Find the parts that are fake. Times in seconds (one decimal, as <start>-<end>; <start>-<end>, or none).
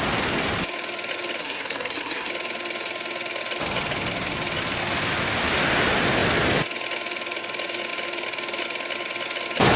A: 1.4-2.3